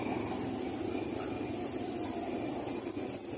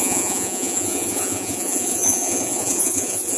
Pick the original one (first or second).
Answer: first